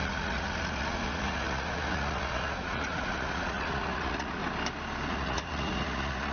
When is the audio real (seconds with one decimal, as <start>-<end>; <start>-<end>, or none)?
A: 4.4-5.1